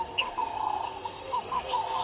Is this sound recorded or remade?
remade